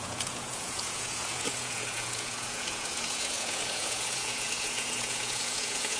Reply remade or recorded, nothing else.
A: remade